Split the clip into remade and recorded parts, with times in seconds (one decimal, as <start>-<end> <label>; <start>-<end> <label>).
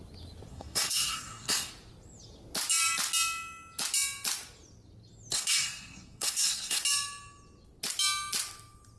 0.0-0.5 recorded; 0.5-1.7 remade; 1.7-5.3 recorded; 5.3-6.8 remade; 6.8-9.0 recorded